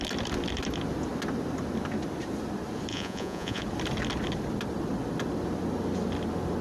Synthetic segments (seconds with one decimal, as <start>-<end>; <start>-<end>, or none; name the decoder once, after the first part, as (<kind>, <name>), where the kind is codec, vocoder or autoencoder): 2.9-3.6 (vocoder, Vocos)